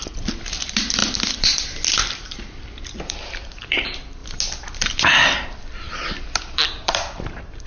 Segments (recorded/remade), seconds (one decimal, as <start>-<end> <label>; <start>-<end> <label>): 0.0-1.0 remade; 1.0-2.8 recorded; 2.8-4.2 remade; 4.2-4.8 recorded; 4.8-7.7 remade